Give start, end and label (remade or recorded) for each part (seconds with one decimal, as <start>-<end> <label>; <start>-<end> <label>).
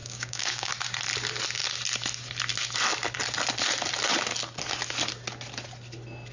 0.0-0.7 remade; 0.7-6.3 recorded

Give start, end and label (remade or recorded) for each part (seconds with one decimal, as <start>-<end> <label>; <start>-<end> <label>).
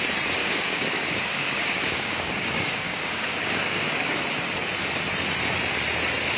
0.0-0.4 recorded; 0.4-4.2 remade; 4.2-6.4 recorded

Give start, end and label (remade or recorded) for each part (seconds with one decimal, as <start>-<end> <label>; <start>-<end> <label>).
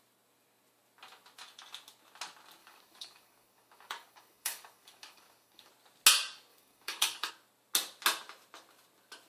0.0-2.6 recorded; 2.6-5.7 remade; 5.7-6.5 recorded; 6.5-7.3 remade; 7.3-9.3 recorded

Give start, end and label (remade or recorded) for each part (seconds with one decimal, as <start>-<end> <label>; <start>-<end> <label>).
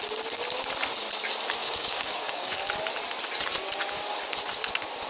0.0-1.6 recorded; 1.6-2.6 remade; 2.6-5.1 recorded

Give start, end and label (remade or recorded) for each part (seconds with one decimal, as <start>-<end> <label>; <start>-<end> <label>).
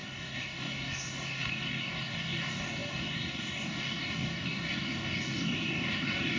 0.0-6.4 remade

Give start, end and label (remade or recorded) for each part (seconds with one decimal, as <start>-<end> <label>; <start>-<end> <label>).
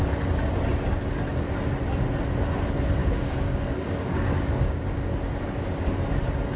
0.0-3.0 recorded; 3.0-5.1 remade; 5.1-6.6 recorded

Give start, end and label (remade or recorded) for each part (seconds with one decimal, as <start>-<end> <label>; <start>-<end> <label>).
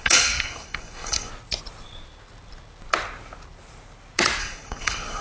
0.0-1.3 remade; 1.3-4.4 recorded; 4.4-5.2 remade